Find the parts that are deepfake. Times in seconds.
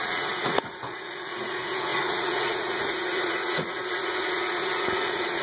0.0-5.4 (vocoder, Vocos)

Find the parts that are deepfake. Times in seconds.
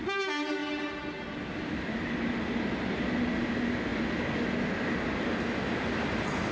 none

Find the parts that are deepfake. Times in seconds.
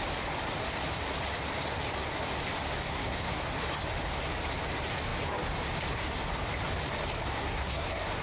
2.9-3.4 (codec, SNAC); 7.4-8.2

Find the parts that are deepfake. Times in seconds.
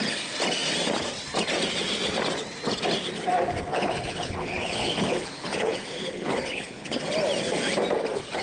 3.7-7.0 (codec, HILCodec)